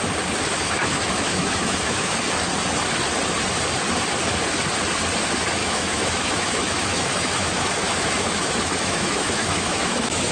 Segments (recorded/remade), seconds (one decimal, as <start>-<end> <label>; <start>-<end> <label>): 0.0-0.5 recorded; 0.5-2.2 remade; 2.2-5.6 recorded; 5.6-10.3 remade